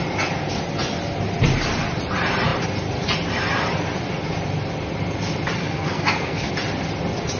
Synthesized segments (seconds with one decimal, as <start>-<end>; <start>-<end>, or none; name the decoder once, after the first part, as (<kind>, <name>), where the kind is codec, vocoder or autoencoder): 5.6-6.5 (codec, SNAC)